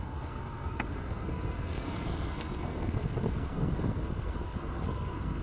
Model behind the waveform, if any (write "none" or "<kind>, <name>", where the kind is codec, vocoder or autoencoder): codec, SNAC